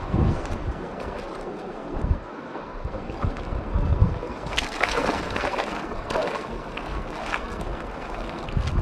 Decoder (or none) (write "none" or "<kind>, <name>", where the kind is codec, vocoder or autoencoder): codec, SNAC